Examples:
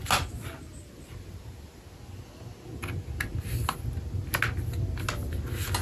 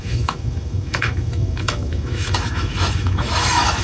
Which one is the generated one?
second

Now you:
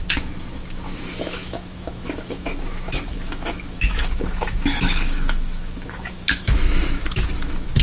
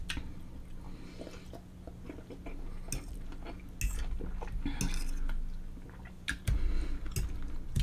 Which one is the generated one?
first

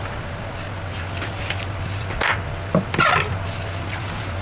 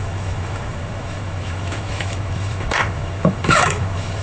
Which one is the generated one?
second